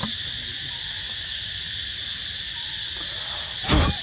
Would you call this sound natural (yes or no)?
yes